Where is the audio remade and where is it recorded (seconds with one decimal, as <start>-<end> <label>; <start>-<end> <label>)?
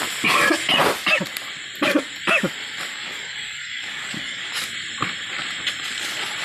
0.0-2.9 recorded; 2.9-4.5 remade; 4.5-6.4 recorded